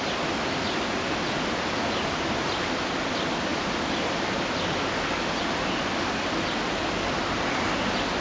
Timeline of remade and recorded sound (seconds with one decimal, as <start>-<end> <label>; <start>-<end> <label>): 0.0-8.2 recorded